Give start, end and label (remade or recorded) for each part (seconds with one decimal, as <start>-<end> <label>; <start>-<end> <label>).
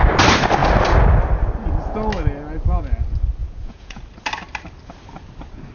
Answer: 0.0-3.4 recorded; 3.4-4.0 remade; 4.0-5.7 recorded